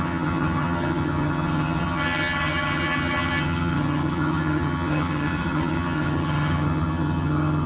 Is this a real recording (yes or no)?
no